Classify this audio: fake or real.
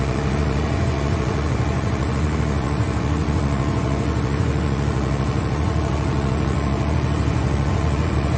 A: fake